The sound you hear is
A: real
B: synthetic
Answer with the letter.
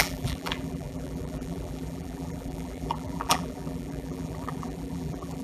B